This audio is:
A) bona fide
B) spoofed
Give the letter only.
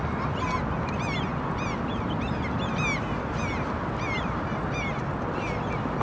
A